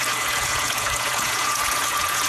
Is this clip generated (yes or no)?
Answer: yes